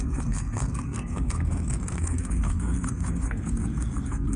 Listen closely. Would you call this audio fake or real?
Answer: fake